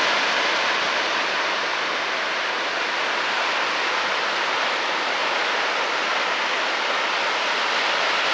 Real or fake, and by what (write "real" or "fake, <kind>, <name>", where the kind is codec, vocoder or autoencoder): real